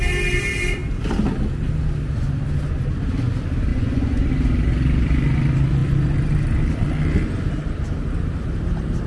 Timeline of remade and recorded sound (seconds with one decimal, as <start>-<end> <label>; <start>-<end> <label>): 0.0-3.7 recorded; 3.7-4.3 remade; 4.3-9.1 recorded